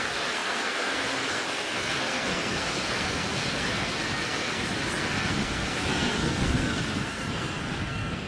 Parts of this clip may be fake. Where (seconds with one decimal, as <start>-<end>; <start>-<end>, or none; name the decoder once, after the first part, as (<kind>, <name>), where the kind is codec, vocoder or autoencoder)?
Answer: 0.0-8.3 (codec, SNAC)